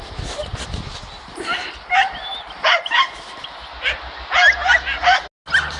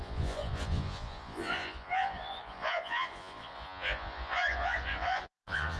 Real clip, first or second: first